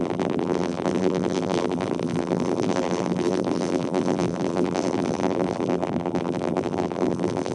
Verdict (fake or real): fake